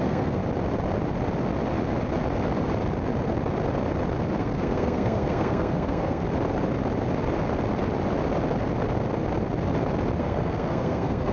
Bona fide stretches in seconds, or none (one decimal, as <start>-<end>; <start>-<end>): 0.4-4.4; 6.2-10.2